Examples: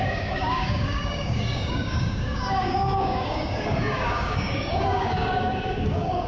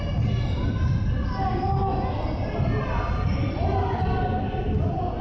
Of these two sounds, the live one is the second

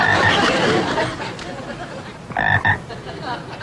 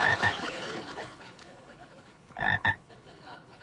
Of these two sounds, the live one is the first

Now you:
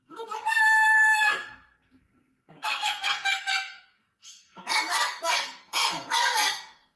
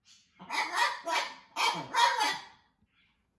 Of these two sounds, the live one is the second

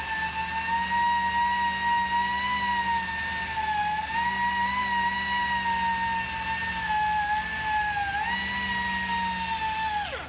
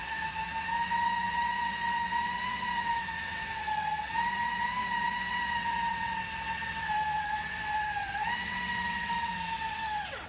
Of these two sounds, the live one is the first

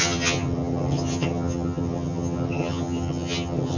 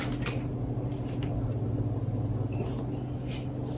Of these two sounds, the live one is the second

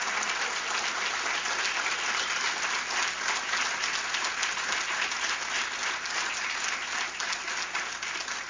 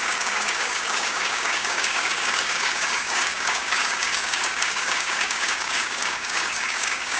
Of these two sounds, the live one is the first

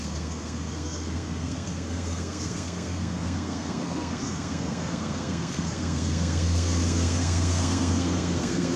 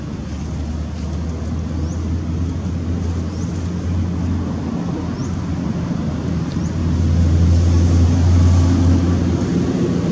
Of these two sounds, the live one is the second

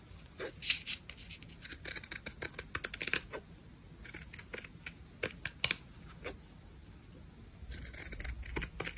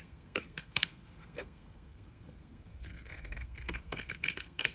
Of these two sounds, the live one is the first